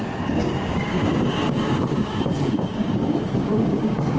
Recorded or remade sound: remade